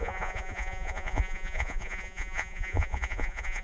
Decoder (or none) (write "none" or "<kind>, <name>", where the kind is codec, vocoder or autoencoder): vocoder, Vocos